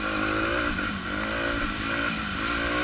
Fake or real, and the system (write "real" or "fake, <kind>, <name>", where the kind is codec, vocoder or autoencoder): real